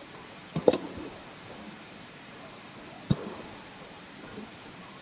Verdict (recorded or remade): remade